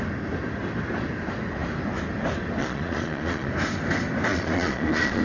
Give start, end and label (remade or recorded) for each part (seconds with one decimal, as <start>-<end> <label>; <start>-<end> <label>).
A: 0.0-2.6 recorded; 2.6-3.5 remade; 3.5-4.3 recorded; 4.3-5.2 remade